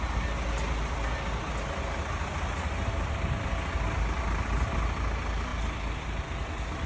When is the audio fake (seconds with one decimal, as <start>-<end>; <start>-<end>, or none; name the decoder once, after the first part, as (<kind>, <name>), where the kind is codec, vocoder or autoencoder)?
none